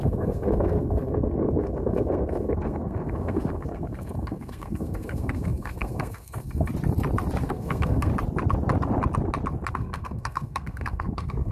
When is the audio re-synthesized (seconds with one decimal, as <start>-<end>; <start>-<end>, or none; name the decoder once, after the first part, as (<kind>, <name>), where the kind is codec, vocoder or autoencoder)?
0.0-6.7 (codec, SNAC); 7.4-8.1; 9.7-11.5